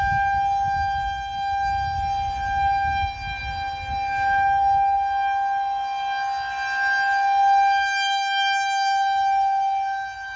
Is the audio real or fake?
real